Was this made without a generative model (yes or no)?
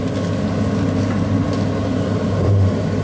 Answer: yes